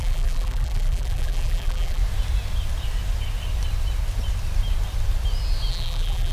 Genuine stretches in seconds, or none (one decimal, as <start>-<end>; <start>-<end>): 2.0-5.7

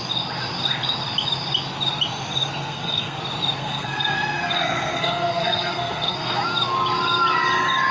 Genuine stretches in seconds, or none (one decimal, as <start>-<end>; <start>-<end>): 0.0-2.6; 3.2-3.6; 6.4-7.9

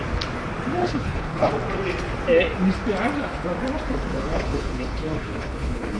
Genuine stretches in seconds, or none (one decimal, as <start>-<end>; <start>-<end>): 0.0-0.8; 1.5-4.1

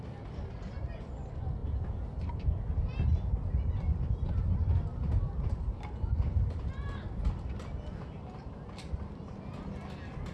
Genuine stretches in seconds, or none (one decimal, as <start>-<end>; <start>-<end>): 0.0-10.3

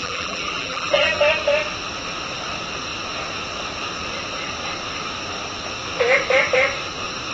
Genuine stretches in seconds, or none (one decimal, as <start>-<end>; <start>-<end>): 1.2-7.3

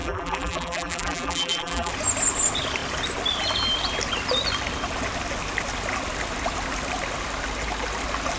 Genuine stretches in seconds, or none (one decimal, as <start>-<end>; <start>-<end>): 1.9-8.4

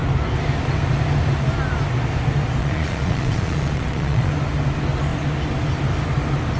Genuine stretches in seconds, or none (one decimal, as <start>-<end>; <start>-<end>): 0.0-2.6; 4.3-6.6